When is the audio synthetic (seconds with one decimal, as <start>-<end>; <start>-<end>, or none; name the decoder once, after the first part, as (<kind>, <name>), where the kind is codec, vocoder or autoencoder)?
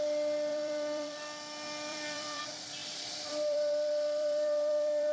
0.5-1.2 (vocoder, BigVGAN v2); 1.9-2.4; 2.8-5.1